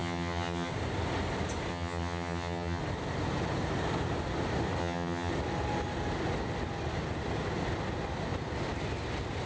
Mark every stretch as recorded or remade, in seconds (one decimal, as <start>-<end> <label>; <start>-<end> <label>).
0.0-0.7 remade; 0.7-1.7 recorded; 1.7-2.8 remade; 2.8-4.8 recorded; 4.8-5.3 remade; 5.3-9.5 recorded